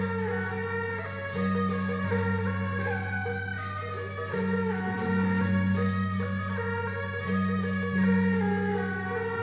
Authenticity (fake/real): real